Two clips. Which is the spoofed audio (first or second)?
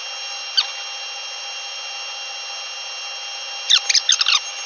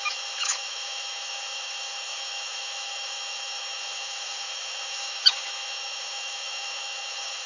second